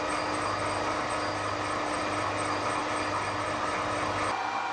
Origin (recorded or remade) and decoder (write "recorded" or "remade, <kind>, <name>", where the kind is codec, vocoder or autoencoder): recorded